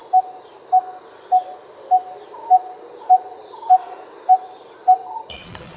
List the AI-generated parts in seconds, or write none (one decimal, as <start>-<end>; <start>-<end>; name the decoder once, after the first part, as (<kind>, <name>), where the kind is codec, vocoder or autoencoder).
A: 5.0-5.8 (vocoder, Vocos)